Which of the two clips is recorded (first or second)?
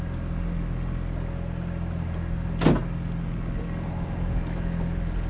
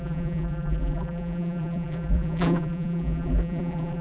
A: first